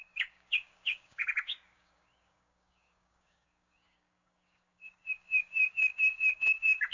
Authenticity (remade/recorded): remade